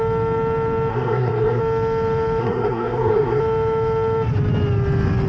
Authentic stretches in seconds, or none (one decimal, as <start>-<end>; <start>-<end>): 0.0-0.9; 1.6-2.4; 3.4-5.3